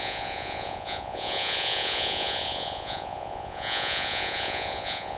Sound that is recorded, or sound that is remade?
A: remade